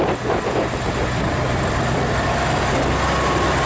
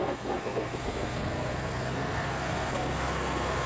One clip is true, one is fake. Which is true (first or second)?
first